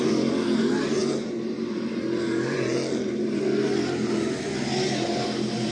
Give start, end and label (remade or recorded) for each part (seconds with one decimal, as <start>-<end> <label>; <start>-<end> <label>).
0.0-5.7 recorded